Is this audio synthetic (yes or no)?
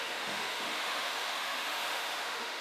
yes